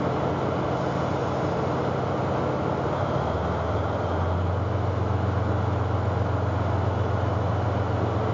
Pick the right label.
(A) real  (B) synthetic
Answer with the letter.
A